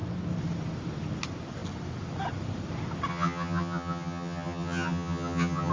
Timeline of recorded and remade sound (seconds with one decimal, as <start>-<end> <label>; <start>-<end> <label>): 0.0-3.1 recorded; 3.1-5.7 remade